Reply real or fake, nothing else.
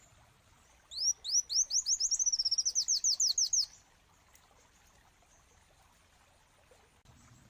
real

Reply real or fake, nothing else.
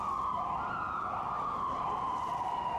real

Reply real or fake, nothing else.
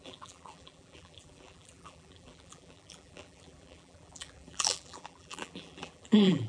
fake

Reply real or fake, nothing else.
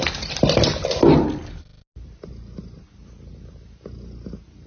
real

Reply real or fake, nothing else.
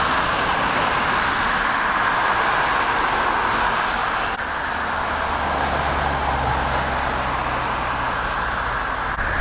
real